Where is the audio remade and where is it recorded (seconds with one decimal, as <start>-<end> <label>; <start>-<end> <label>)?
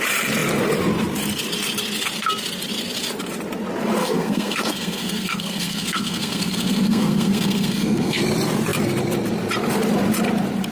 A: 0.0-4.0 recorded; 4.0-8.2 remade; 8.2-10.7 recorded